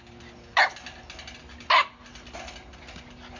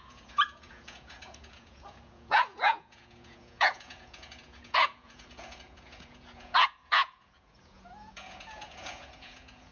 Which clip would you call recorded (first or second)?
first